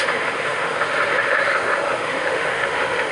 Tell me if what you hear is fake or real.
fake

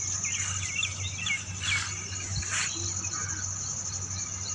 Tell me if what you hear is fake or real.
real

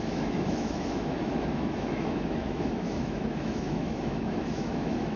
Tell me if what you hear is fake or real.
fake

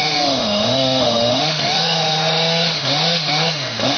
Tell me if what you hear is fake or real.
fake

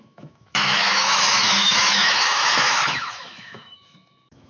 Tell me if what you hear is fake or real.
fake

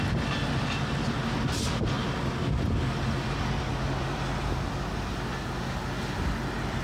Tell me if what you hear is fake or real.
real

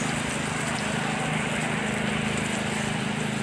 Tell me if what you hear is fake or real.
real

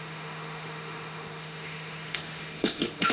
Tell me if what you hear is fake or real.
fake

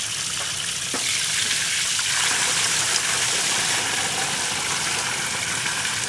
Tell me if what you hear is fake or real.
real